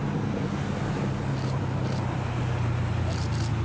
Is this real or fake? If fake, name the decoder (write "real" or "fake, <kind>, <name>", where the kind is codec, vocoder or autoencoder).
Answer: real